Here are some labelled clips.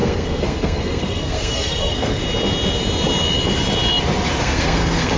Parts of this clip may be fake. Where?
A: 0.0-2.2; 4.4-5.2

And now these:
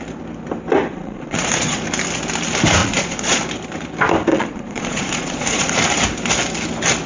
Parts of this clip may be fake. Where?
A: 0.9-1.8; 2.8-3.4; 4.3-5.8

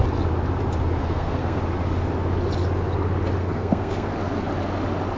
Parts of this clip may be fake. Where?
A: 1.0-1.6; 3.4-4.1

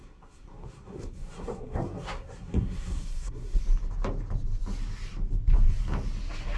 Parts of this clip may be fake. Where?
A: 0.0-3.6

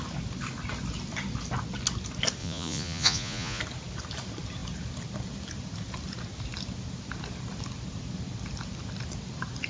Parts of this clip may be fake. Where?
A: 2.4-3.6

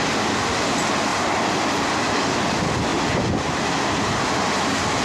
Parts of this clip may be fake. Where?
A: 2.9-4.2